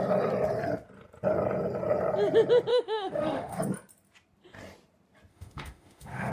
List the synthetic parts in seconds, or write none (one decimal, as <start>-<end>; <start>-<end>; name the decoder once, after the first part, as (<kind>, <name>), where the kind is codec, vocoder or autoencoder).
2.7-3.6 (autoencoder, DAC-VAE); 5.3-6.3

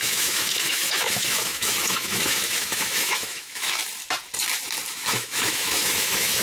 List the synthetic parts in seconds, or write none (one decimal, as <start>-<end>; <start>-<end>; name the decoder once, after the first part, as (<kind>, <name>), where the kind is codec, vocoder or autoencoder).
0.0-3.8 (autoencoder, DAC-VAE); 4.9-6.4

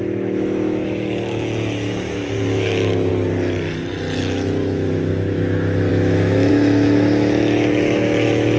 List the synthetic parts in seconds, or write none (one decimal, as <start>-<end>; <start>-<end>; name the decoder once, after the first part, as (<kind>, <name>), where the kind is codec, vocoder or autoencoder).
0.0-3.1 (autoencoder, DAC-VAE); 4.2-8.6

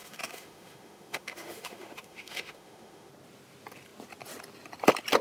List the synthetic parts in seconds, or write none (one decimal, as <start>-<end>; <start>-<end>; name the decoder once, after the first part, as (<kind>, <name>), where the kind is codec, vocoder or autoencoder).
0.0-3.1 (autoencoder, DAC-VAE)